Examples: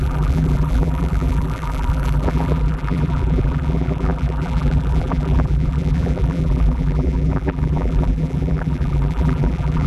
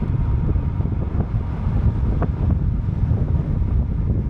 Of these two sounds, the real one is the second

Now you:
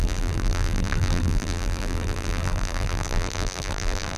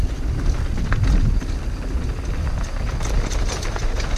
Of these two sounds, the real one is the second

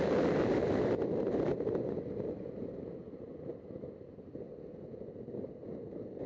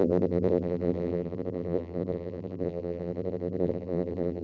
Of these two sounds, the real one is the first